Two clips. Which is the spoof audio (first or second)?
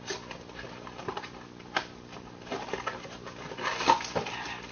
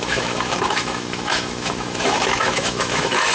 second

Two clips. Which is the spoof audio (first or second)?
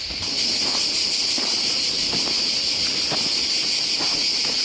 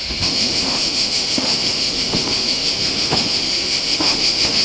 second